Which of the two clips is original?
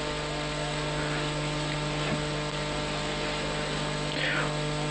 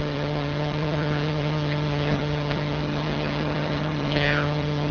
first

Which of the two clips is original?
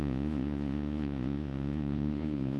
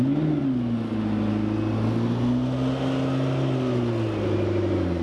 second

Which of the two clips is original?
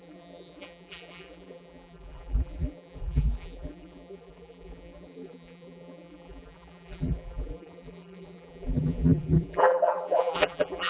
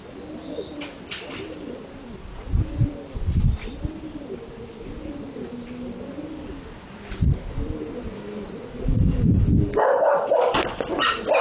second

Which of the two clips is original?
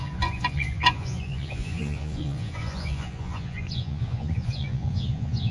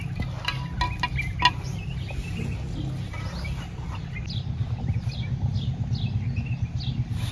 second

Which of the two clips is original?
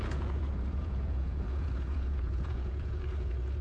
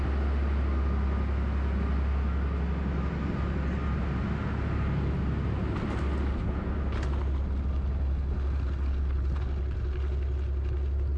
second